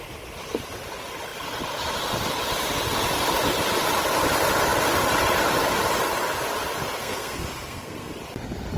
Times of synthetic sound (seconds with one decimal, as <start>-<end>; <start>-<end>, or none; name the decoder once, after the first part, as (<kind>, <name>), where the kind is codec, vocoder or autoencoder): 7.0-8.1 (codec, SNAC)